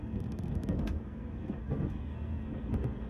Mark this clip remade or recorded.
remade